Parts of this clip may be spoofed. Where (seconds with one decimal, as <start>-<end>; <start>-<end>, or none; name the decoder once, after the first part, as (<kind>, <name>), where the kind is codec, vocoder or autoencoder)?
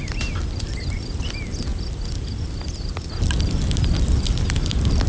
none